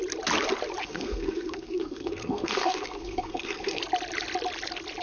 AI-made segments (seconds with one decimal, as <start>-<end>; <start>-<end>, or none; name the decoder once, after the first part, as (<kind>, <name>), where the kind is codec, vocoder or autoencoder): 0.8-3.8 (codec, SNAC)

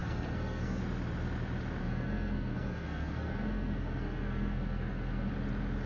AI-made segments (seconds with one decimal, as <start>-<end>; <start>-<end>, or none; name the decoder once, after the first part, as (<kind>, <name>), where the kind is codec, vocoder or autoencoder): 0.0-0.8 (codec, SNAC); 1.8-5.3

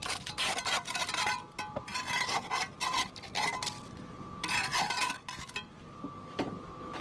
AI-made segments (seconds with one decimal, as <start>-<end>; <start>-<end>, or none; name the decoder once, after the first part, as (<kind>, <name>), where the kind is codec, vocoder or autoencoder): none

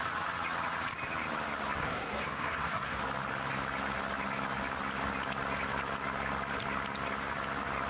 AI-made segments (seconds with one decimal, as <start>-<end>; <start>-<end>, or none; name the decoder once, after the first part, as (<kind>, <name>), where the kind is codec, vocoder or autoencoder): 1.8-3.0 (codec, SNAC)

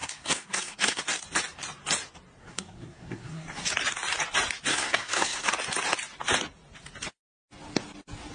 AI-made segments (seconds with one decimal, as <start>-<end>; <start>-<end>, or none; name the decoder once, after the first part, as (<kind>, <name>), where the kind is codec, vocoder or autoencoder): 0.0-1.0 (codec, SNAC); 2.4-3.6; 4.7-5.5

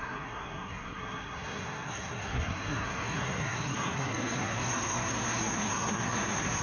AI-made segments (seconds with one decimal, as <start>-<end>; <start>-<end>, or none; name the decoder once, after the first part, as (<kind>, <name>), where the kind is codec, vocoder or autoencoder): 0.0-6.6 (codec, SNAC)